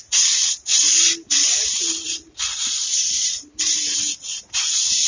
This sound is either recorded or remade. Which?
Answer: remade